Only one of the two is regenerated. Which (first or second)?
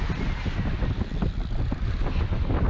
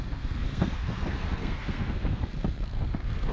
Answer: second